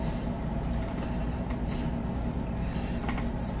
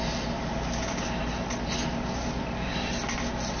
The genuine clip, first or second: second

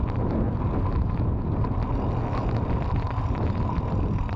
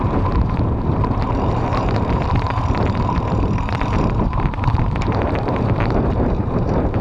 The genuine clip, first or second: first